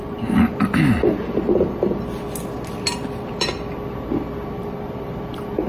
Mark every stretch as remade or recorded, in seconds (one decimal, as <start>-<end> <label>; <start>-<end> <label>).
0.0-5.7 recorded